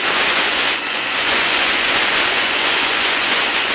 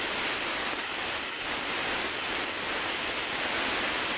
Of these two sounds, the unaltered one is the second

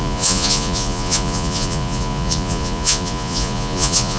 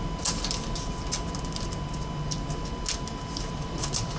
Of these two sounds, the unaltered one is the second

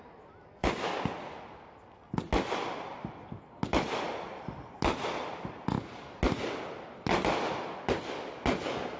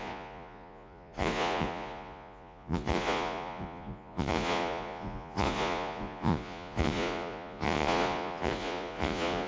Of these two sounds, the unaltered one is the first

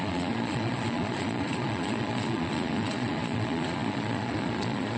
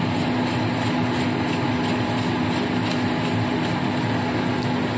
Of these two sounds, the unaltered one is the second